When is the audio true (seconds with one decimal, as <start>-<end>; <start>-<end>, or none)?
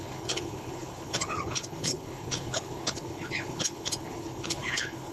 none